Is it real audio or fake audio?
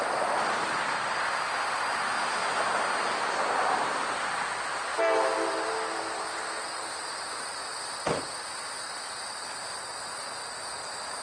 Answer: real